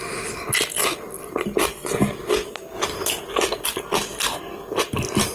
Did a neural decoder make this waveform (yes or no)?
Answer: no